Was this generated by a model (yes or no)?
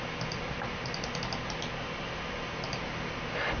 no